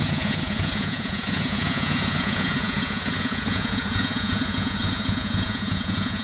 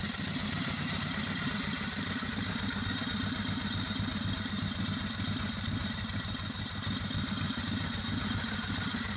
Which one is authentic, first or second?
second